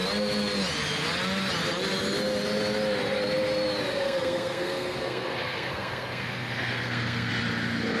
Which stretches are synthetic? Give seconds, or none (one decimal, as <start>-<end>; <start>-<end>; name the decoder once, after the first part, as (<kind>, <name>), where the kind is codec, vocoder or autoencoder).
3.9-7.3 (codec, SNAC)